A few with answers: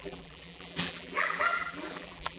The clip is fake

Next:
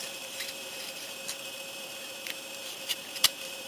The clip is fake